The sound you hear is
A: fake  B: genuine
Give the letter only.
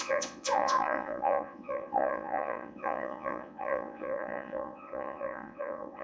A